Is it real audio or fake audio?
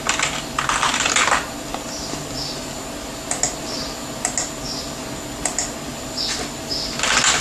real